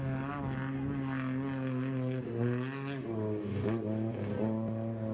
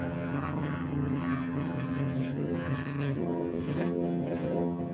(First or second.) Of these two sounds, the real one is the first